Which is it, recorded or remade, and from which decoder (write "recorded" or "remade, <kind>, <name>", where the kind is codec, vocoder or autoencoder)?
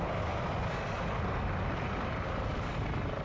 recorded